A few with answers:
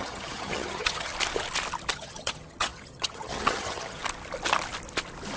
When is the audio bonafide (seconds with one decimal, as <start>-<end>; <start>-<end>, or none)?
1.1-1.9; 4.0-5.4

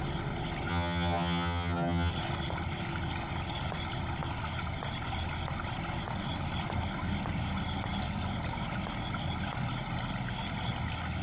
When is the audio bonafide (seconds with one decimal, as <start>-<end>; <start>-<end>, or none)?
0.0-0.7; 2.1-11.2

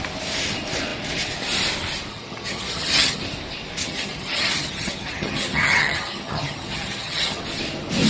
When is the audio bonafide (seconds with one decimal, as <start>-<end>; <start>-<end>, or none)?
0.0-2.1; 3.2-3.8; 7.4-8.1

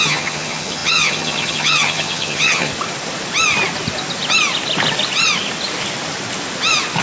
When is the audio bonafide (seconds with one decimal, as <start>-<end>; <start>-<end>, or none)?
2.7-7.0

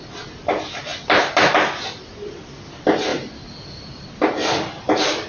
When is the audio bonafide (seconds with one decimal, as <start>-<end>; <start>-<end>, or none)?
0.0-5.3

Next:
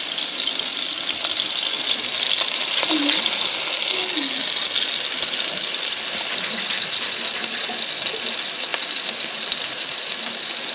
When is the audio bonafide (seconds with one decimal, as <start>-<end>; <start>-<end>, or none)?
0.0-10.7